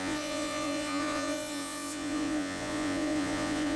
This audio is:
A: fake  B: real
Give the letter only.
A